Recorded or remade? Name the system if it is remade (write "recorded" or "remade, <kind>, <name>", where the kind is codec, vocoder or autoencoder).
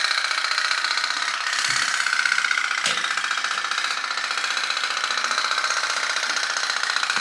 recorded